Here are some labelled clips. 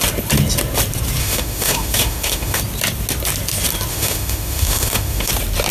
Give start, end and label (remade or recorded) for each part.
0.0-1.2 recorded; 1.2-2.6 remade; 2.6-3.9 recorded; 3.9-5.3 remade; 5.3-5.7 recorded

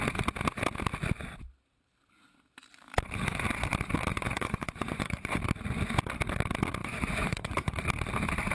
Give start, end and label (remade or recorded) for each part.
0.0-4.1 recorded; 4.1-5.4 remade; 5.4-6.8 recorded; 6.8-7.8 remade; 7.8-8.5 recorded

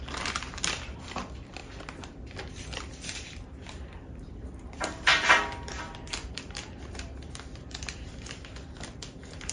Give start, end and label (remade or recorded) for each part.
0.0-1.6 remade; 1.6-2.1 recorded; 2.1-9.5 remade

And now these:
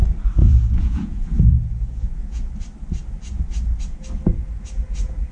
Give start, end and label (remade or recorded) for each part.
0.0-0.4 recorded; 0.4-2.5 remade; 2.5-5.3 recorded